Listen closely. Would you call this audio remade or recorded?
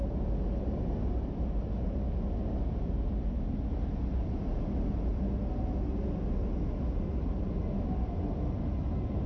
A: recorded